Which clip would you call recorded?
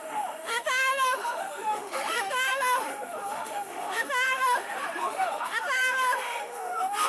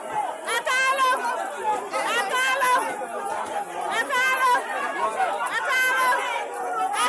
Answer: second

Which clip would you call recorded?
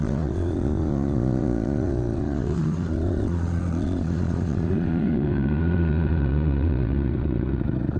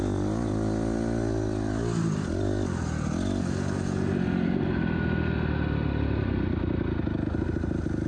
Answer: second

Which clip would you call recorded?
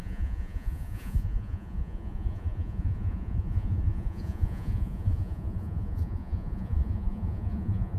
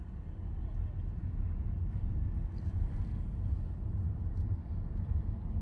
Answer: second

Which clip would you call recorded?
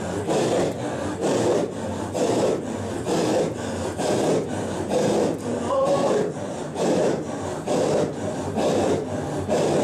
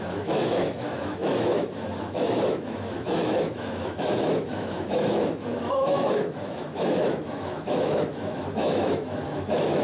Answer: first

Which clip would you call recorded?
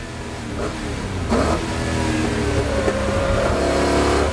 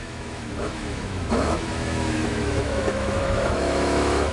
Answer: first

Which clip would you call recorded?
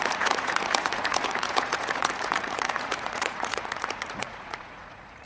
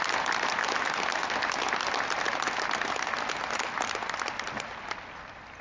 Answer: second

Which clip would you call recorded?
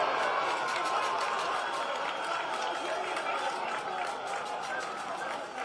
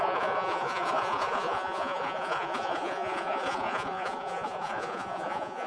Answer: first